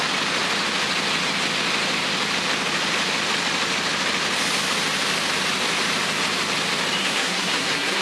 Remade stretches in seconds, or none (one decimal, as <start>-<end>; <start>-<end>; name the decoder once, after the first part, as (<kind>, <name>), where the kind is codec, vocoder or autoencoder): 7.0-8.0 (codec, SNAC)